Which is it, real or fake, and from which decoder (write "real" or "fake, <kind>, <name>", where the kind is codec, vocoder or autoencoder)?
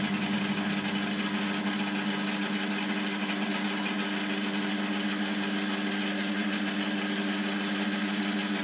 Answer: real